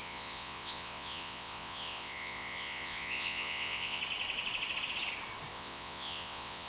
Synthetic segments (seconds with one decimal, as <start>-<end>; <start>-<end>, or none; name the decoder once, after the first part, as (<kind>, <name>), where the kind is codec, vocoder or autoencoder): 0.0-4.0 (vocoder, Vocos); 5.5-6.7

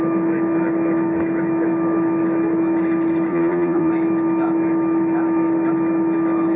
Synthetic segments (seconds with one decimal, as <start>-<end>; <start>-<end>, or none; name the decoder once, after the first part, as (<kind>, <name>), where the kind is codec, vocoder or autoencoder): 3.3-3.9 (vocoder, Vocos)

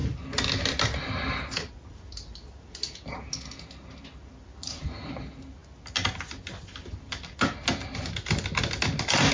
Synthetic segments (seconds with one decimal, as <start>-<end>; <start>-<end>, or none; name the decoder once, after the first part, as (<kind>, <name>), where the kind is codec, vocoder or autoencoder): 4.6-5.1 (vocoder, Vocos)